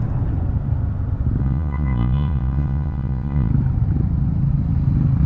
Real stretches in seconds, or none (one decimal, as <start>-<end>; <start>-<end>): 0.0-1.4; 3.5-5.3

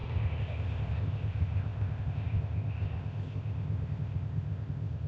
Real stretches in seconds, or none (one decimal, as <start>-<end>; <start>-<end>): none

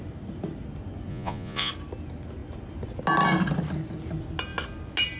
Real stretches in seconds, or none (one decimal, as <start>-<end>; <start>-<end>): 0.0-1.1; 1.7-5.2

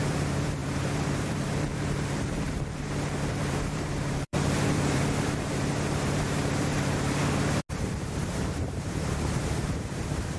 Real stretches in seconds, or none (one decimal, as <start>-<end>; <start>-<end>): 7.2-8.3

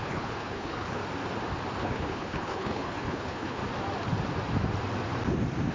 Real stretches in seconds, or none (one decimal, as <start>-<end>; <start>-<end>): 1.0-1.8; 3.6-5.7

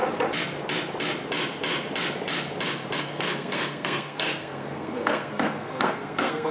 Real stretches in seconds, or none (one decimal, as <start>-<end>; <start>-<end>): 0.0-3.0